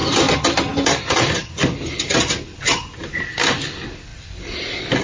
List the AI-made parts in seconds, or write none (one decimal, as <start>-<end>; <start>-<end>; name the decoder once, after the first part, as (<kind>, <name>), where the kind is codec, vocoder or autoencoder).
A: 0.0-1.9 (vocoder, BigVGAN v2); 4.1-5.0